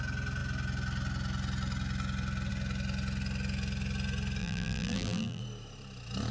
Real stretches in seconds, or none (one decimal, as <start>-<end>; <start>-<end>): 0.0-4.4; 5.4-6.3